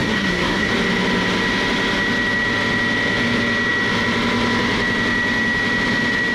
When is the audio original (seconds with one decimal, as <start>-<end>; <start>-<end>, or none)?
0.7-6.3